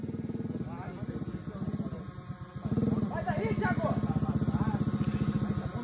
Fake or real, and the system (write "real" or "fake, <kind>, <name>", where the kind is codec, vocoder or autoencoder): real